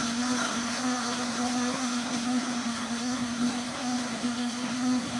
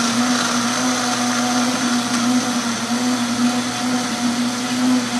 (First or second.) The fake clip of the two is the first